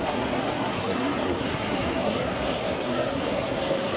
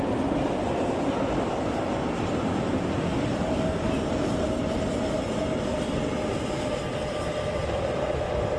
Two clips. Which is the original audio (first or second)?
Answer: second